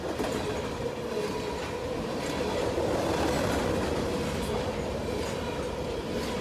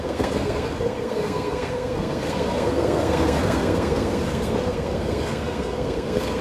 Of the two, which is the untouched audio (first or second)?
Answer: first